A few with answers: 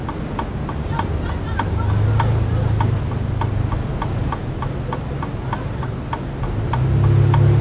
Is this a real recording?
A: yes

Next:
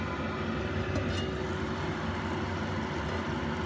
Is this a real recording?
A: yes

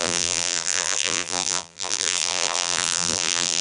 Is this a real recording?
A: no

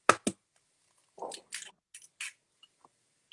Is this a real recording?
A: yes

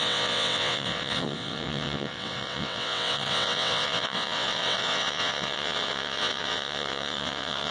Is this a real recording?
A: no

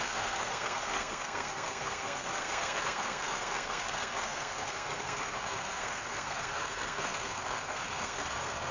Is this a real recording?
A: no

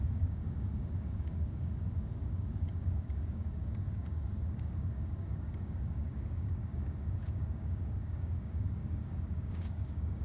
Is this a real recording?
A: no